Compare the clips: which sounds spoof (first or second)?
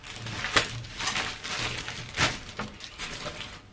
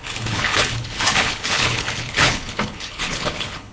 second